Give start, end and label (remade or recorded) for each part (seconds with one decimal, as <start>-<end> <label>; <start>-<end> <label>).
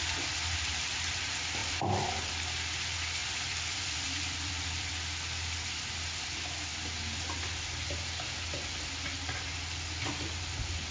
0.0-1.2 remade; 1.2-1.6 recorded; 1.6-2.3 remade; 2.3-3.2 recorded; 3.2-4.9 remade; 4.9-10.9 recorded